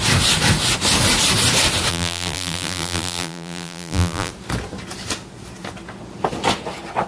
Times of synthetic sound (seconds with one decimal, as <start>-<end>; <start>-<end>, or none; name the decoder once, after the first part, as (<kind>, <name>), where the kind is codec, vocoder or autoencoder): 1.9-4.3 (vocoder, BigVGAN v2)